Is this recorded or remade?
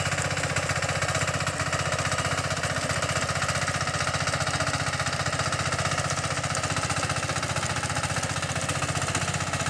recorded